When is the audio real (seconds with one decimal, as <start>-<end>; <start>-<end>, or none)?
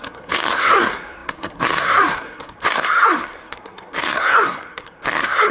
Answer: none